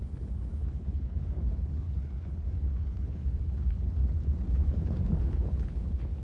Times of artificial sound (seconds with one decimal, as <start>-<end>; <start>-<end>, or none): 0.0-4.0; 4.5-6.2

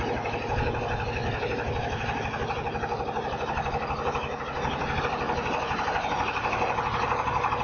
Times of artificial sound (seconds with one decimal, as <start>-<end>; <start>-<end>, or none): none

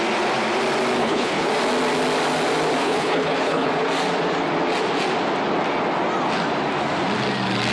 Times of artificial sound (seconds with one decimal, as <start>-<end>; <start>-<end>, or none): 1.0-1.5; 2.8-3.7